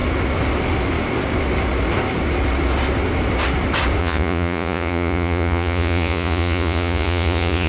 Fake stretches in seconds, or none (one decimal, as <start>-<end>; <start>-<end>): 4.0-7.7